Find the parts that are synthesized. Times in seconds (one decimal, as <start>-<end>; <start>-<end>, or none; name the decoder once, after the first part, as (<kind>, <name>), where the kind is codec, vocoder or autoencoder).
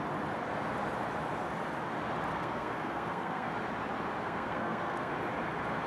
2.3-3.5 (codec, SNAC); 4.2-5.1